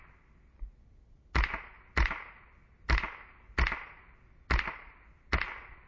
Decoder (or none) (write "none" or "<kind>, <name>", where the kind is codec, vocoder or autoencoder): none